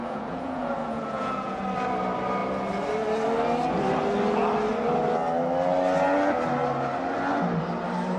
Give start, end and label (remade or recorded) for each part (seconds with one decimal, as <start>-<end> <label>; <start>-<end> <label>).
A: 0.0-1.6 remade; 1.6-8.2 recorded